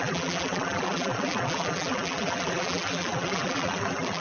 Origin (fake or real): fake